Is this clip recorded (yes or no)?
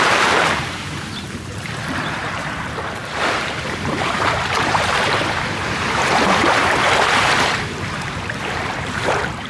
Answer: no